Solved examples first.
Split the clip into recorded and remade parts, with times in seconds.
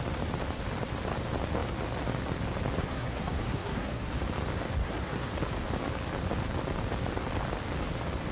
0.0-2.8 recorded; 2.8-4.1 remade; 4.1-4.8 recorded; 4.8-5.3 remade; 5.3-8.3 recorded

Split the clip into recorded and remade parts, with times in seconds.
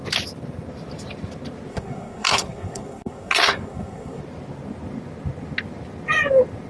0.0-1.7 recorded; 1.7-4.2 remade; 4.2-6.7 recorded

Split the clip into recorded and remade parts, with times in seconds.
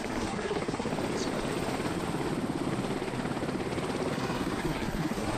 0.0-0.9 remade; 0.9-4.1 recorded; 4.1-5.4 remade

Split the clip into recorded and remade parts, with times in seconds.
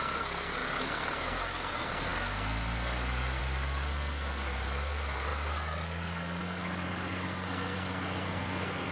0.0-8.9 remade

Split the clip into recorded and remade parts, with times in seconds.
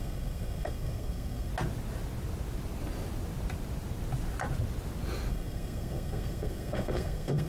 0.0-1.5 remade; 1.5-5.3 recorded; 5.3-7.5 remade